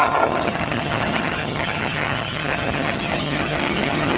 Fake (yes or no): yes